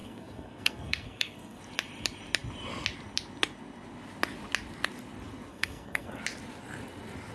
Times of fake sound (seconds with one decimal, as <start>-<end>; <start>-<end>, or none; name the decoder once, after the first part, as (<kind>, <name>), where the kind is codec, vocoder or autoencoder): 0.0-1.6 (codec, SNAC); 5.5-6.2